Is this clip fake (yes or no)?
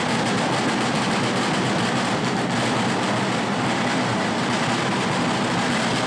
no